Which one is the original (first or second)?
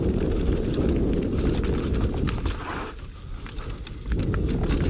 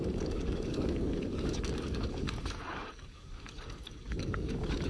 first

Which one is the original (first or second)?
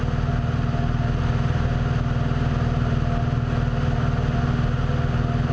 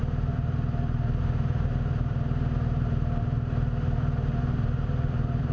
first